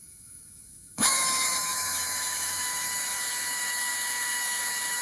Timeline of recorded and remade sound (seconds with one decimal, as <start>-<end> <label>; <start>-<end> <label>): 0.0-5.0 remade